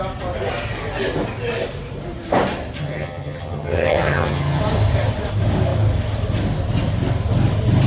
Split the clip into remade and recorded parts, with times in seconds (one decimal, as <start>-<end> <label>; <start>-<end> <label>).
0.0-2.8 recorded; 2.8-4.6 remade; 4.6-7.9 recorded